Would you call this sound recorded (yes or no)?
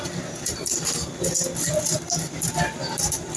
yes